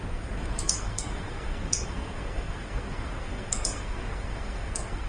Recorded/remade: remade